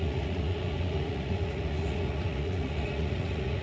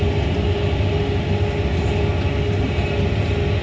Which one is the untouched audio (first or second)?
second